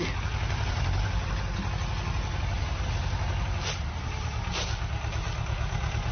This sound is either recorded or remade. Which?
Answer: recorded